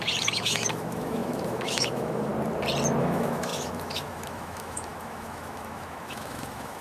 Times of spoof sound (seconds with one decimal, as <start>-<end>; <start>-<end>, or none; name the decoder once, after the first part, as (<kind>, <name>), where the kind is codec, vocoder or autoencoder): 0.0-2.3 (autoencoder, DAC-VAE); 3.0-6.8